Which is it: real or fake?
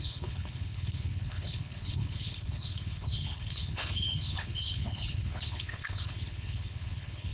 fake